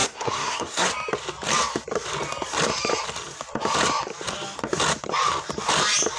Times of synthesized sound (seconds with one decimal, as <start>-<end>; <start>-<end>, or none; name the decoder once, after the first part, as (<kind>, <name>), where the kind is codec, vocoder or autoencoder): 0.0-0.9 (codec, SNAC)